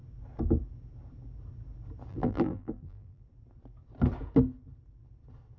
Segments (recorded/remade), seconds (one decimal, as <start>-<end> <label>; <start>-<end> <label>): 0.0-2.1 recorded; 2.1-3.2 remade; 3.2-5.6 recorded